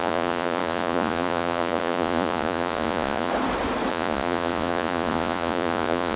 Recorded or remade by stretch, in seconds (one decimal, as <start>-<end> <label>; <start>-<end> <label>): 0.0-3.3 remade; 3.3-3.9 recorded; 3.9-6.2 remade